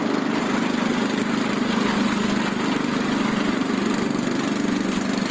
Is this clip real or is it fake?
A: real